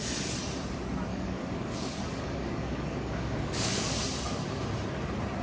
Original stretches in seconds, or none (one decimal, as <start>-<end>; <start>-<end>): 0.0-1.1; 4.0-5.4